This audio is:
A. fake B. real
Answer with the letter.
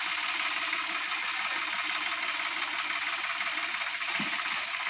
B